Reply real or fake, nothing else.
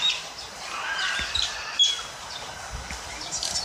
real